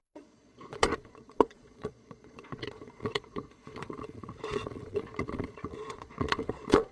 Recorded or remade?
remade